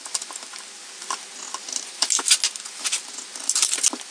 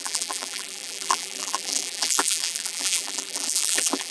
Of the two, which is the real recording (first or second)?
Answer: first